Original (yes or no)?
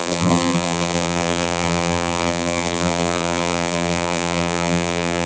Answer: no